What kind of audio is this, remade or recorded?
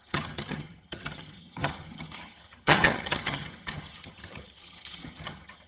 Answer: remade